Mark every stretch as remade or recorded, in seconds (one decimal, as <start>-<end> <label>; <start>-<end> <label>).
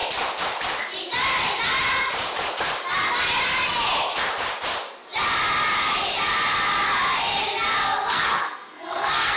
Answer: 0.0-7.8 recorded; 7.8-9.4 remade